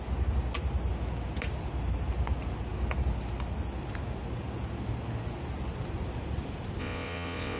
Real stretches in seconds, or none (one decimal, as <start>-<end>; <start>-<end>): 0.0-6.8